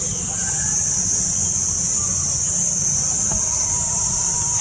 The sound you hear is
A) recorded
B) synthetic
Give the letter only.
A